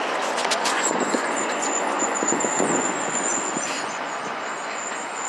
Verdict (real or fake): fake